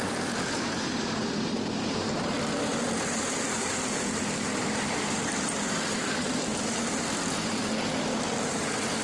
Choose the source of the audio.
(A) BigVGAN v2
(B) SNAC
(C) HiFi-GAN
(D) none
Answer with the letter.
A